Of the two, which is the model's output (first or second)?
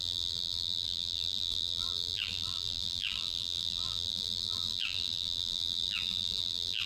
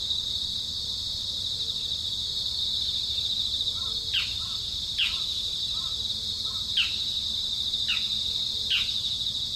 first